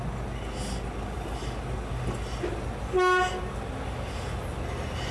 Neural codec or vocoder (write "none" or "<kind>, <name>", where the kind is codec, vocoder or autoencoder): none